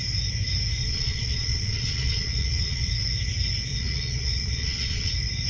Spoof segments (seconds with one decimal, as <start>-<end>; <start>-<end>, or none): 0.8-2.9; 3.7-5.1